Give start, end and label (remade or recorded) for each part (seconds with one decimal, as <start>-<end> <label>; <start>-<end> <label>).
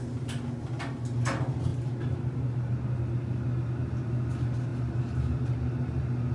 0.0-6.3 recorded